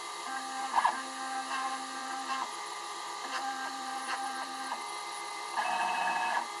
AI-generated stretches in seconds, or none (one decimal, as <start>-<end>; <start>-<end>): 2.0-6.0